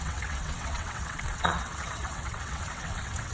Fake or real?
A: fake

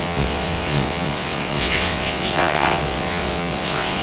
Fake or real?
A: fake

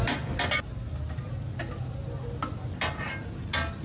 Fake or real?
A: real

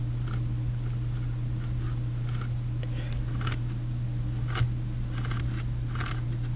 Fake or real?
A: real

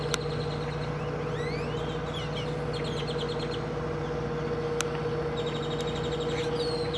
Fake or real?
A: real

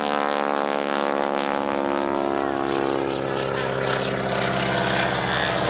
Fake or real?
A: real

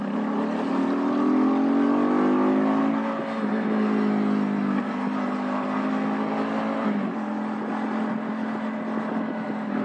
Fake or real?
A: real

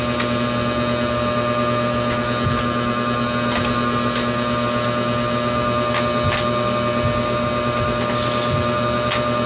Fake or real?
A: real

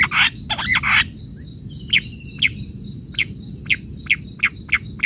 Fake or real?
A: real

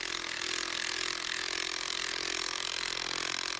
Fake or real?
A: real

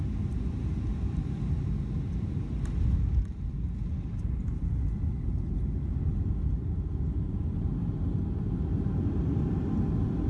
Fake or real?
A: real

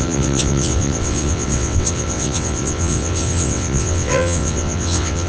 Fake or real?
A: fake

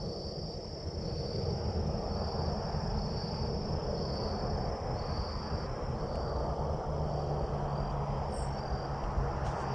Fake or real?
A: real